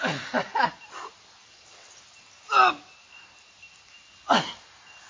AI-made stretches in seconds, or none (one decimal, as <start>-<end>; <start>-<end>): none